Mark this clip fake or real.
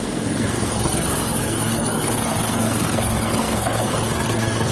fake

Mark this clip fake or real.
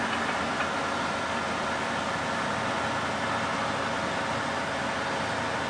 real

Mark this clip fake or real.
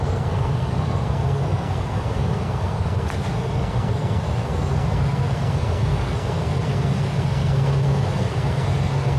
fake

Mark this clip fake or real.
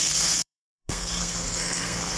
fake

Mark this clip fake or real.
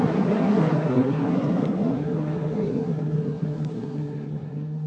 fake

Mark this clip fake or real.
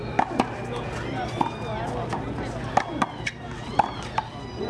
real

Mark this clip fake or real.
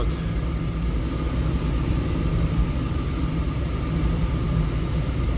real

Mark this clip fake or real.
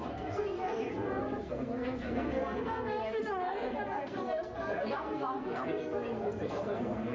fake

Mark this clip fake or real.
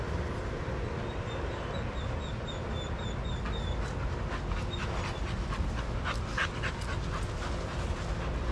real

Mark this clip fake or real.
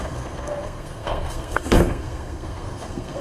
fake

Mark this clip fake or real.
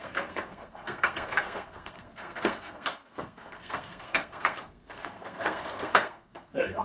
fake